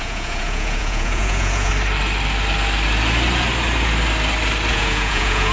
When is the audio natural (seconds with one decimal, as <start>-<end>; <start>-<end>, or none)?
1.7-4.7